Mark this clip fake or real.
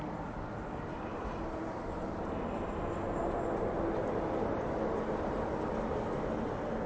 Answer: real